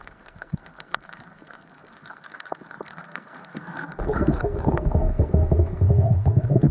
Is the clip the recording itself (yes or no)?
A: no